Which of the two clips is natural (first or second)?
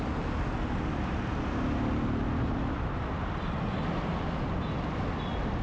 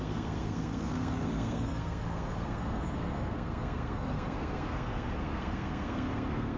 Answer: first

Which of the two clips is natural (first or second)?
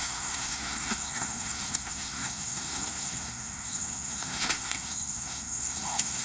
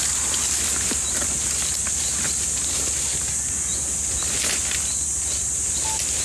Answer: second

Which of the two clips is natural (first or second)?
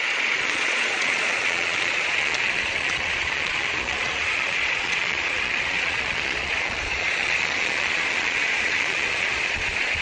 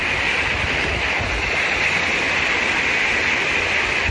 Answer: second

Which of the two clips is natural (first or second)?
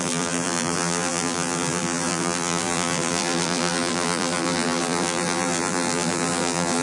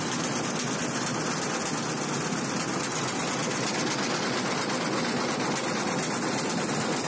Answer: second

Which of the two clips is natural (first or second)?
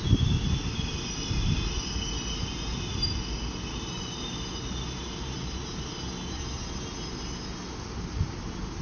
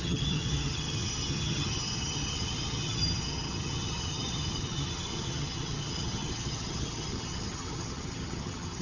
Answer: first